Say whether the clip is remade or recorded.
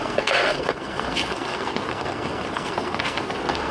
remade